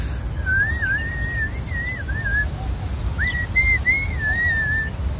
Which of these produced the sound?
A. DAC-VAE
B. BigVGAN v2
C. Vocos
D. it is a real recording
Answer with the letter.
D